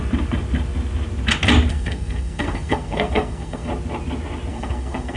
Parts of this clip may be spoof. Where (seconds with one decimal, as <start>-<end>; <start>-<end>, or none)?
1.7-3.7; 4.5-5.2